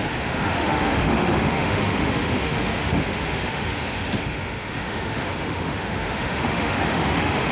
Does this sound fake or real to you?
fake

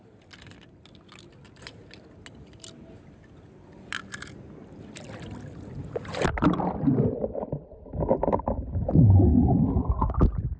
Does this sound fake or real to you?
real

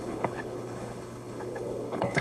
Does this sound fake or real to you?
fake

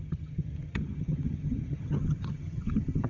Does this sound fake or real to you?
fake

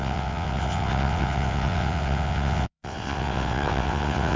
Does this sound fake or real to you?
fake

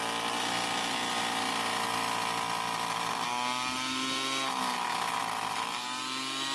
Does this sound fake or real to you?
real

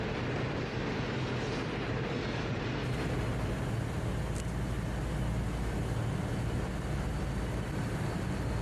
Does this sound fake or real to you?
real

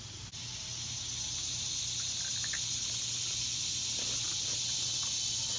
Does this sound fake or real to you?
real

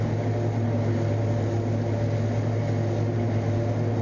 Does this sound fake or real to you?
real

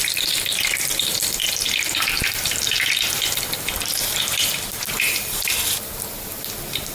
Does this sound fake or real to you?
real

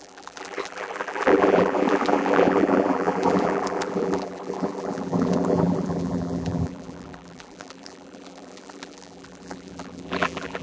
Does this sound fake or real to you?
fake